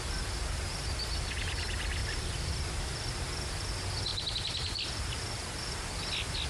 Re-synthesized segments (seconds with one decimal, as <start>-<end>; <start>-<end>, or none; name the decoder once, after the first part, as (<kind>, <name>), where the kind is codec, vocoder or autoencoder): 2.0-3.2 (vocoder, BigVGAN v2); 4.1-5.0